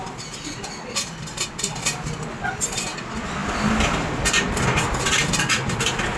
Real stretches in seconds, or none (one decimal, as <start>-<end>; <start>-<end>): 0.0-6.2